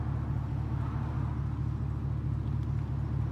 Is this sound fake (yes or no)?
no